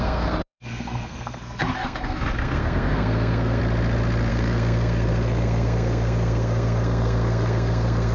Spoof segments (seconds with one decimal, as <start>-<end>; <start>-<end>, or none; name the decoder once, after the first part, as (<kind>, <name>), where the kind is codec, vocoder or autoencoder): 0.0-3.6 (codec, SNAC); 4.3-8.1